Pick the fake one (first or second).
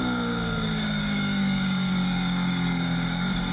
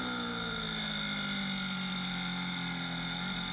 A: first